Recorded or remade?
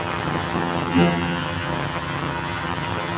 remade